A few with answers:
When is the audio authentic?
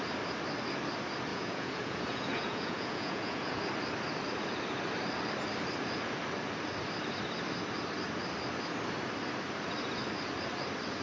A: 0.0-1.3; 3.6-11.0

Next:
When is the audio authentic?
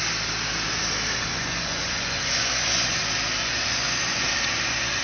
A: 0.0-1.3; 3.0-3.4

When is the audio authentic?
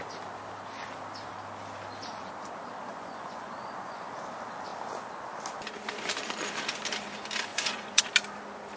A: 0.0-2.9; 4.1-7.5; 8.0-8.8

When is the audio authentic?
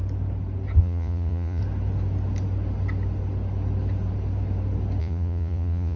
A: 0.0-0.8; 1.6-5.0